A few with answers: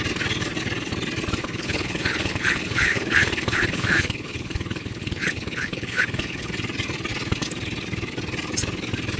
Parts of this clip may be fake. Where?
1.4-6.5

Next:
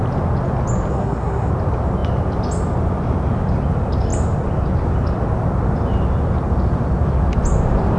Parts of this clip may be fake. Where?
0.9-1.5

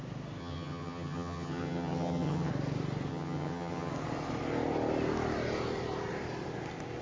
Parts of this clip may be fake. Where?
0.4-2.5; 3.1-3.9

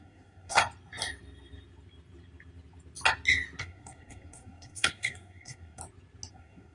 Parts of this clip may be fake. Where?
0.0-0.6; 3.6-5.8; 6.3-6.7

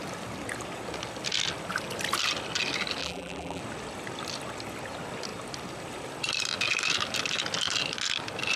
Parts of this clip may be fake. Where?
3.0-3.6

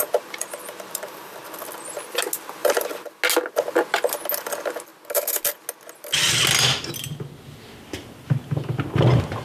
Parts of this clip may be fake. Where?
0.0-1.4; 2.6-3.2